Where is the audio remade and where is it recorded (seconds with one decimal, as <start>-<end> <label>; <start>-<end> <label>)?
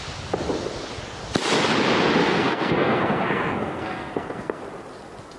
0.0-2.2 recorded; 2.2-4.6 remade; 4.6-5.4 recorded